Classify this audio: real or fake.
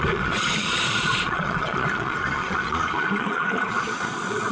fake